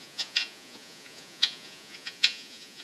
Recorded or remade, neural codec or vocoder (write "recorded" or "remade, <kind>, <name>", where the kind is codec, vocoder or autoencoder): remade, vocoder, Vocos